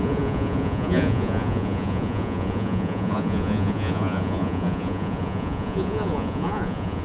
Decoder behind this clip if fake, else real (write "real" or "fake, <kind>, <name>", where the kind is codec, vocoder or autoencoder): fake, vocoder, Vocos